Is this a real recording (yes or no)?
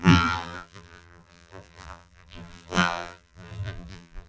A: no